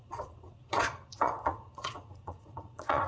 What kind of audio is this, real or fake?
fake